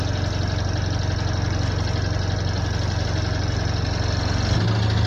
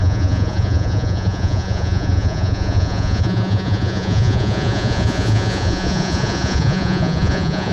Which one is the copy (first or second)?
second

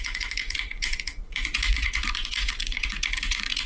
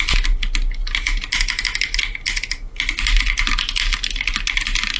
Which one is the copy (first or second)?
first